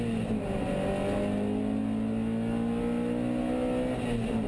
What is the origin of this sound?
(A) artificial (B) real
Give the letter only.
B